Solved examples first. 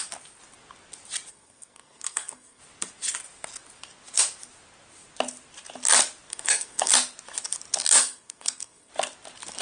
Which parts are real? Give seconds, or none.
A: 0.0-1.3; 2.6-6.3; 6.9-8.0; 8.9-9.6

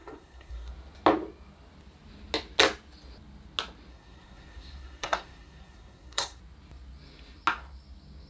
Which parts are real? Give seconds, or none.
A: 0.7-3.9; 6.4-8.3

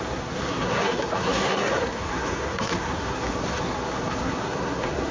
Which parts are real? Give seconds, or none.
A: none

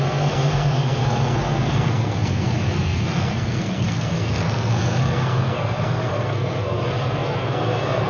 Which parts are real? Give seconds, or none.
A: none

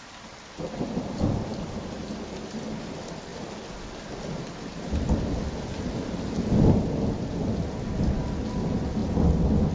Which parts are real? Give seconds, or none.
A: 0.0-9.7